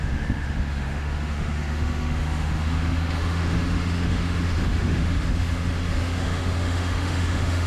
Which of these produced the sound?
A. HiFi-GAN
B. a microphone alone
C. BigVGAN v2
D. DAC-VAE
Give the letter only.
D